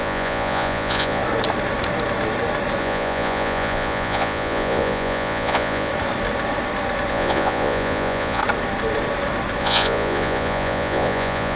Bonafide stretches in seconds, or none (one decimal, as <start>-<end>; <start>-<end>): 1.2-2.8; 5.9-7.1; 8.4-9.6